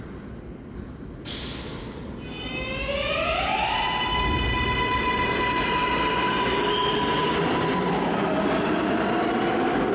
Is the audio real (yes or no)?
yes